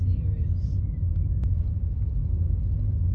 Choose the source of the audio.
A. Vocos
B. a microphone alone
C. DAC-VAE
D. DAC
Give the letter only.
B